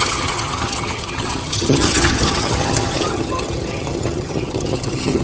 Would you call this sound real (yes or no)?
no